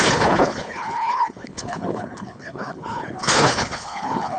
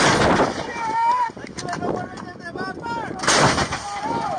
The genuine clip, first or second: second